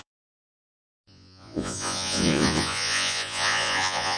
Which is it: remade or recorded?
remade